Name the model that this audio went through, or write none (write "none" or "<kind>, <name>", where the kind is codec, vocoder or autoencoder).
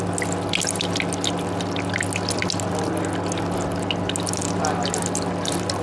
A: none